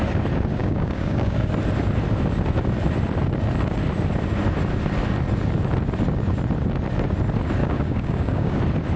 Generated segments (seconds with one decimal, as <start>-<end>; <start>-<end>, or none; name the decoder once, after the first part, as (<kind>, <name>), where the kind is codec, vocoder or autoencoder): 0.6-1.5 (codec, DAC); 7.6-8.6